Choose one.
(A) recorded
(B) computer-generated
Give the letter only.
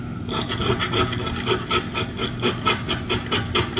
A